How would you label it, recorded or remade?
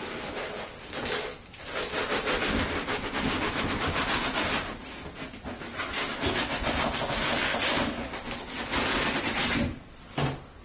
recorded